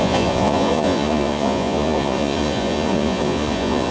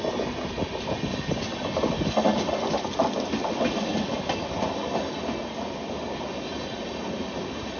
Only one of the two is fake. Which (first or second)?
first